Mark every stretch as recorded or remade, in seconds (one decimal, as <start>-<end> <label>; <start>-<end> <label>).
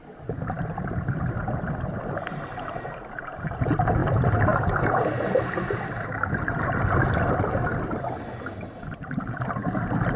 0.0-10.2 recorded